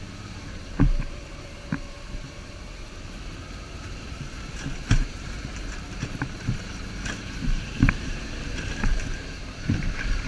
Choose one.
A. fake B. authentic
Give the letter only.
A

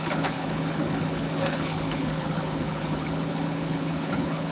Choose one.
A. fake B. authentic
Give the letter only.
A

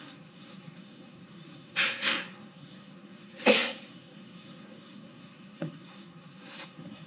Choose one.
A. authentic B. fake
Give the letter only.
B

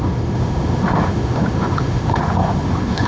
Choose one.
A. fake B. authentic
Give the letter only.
A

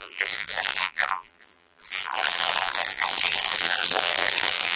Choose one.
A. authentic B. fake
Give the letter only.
B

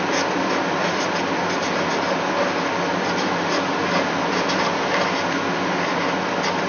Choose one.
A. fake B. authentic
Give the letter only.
B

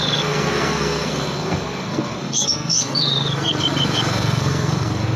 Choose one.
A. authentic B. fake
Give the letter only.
B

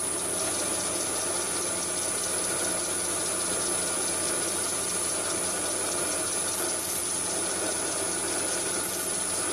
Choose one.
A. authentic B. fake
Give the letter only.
A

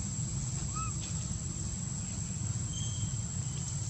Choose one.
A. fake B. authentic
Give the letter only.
B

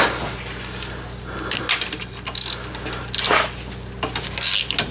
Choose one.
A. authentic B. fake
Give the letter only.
A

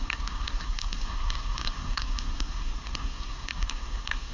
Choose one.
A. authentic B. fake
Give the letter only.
B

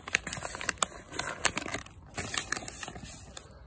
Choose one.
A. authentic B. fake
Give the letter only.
A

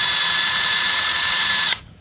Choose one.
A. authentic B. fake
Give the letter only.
B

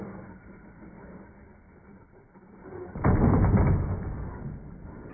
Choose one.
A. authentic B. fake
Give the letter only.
A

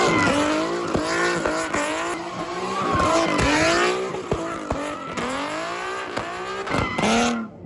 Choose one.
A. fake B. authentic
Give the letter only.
B